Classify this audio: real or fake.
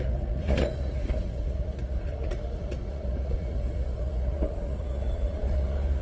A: fake